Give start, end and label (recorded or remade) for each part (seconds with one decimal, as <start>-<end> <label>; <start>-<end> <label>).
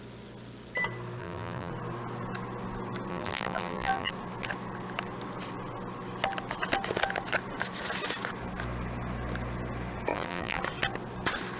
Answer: 0.0-1.2 recorded; 1.2-1.7 remade; 1.7-3.1 recorded; 3.1-4.1 remade; 4.1-10.1 recorded; 10.1-10.6 remade; 10.6-11.6 recorded